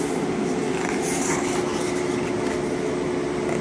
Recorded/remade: recorded